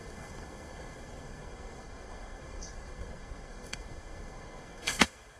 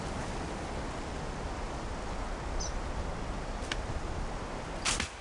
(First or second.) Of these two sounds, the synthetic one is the first